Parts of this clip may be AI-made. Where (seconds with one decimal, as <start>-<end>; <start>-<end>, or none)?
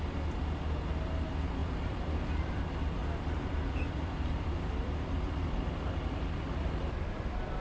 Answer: 1.6-2.6; 3.0-7.6